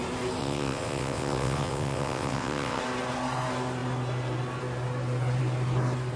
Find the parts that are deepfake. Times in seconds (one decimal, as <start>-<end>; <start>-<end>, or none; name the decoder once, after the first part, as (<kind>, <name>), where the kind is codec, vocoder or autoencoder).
0.4-2.8 (vocoder, WaveNeXt)